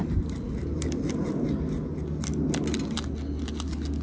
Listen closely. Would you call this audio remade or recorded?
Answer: recorded